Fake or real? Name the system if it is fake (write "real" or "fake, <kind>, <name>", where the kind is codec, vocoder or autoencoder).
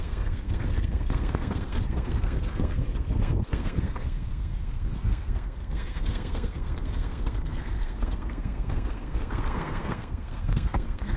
fake, codec, SNAC